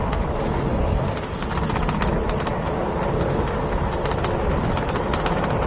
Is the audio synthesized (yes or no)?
no